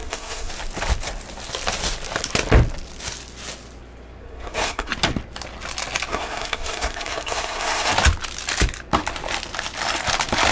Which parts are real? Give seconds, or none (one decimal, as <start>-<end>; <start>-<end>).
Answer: 0.5-4.2; 4.9-6.1; 7.9-10.5